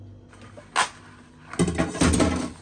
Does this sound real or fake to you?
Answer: real